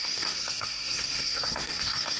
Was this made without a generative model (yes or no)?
no